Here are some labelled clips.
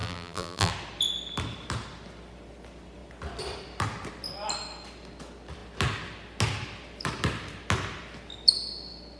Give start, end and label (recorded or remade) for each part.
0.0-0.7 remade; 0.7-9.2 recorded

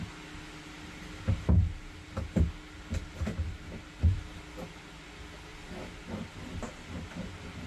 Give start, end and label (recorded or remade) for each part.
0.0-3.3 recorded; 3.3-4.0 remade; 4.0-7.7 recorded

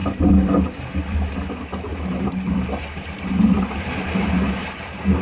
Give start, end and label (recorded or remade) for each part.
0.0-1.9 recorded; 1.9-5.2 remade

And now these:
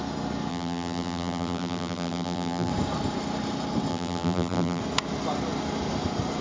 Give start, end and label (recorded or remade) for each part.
0.0-0.5 recorded; 0.5-2.7 remade; 2.7-3.9 recorded; 3.9-4.8 remade; 4.8-6.4 recorded